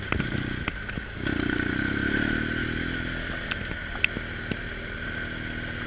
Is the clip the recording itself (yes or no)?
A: yes